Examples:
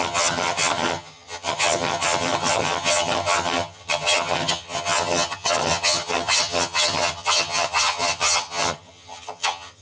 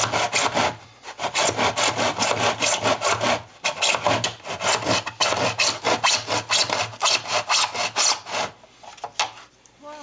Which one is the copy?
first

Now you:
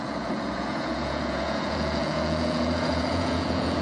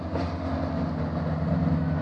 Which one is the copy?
first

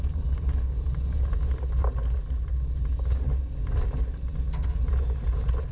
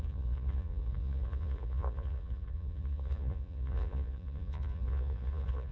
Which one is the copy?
second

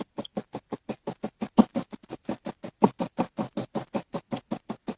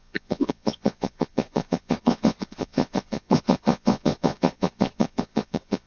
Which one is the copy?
second